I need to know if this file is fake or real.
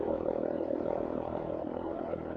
fake